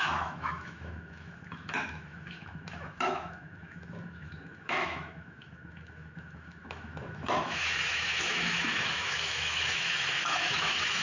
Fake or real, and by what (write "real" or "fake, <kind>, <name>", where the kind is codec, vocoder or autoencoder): fake, autoencoder, DAC-VAE